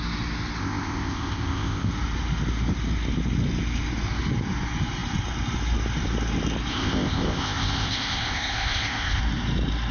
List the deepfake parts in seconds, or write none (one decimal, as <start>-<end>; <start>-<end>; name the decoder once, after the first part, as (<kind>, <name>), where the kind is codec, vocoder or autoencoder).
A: 0.6-1.9 (codec, ZipCodec); 6.7-9.2